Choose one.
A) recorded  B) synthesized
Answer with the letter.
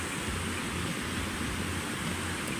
A